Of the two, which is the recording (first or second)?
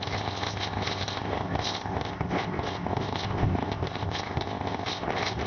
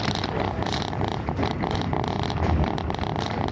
second